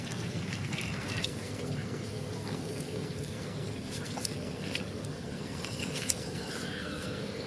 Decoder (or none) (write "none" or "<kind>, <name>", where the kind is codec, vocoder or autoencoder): codec, SNAC